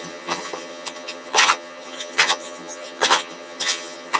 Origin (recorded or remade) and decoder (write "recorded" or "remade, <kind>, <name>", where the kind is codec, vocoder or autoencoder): remade, vocoder, HiFi-GAN